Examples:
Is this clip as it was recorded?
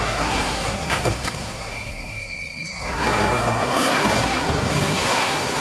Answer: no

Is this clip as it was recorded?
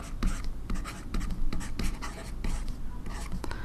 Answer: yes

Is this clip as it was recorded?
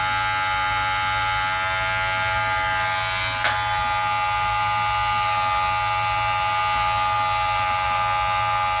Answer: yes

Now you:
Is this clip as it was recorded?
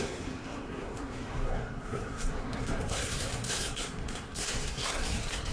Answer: no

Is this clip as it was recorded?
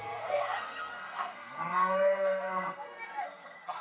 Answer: no